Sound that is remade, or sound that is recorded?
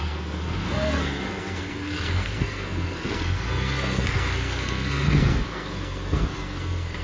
remade